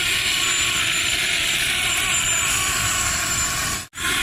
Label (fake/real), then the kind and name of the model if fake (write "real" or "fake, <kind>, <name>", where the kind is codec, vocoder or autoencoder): real